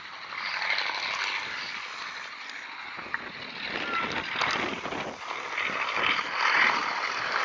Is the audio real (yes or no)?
yes